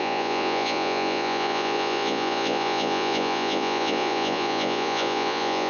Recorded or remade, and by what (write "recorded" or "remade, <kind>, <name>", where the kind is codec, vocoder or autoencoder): remade, vocoder, Vocos